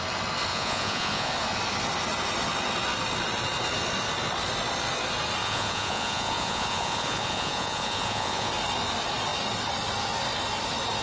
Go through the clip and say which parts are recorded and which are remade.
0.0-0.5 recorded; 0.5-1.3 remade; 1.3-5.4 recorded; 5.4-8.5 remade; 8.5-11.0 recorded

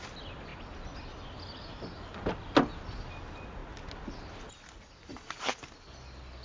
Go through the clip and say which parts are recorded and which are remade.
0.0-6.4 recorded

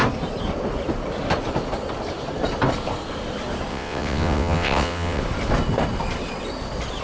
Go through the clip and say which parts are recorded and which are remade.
0.0-3.7 recorded; 3.7-5.2 remade; 5.2-7.0 recorded

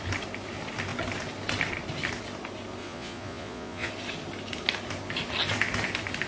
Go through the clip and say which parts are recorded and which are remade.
0.0-2.8 recorded; 2.8-3.9 remade; 3.9-6.3 recorded

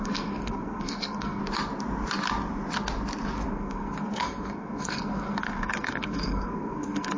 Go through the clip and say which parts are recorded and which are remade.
0.0-1.4 remade; 1.4-3.5 recorded; 3.5-7.2 remade